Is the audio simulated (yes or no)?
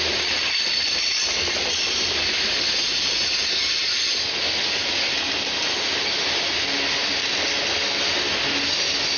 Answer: no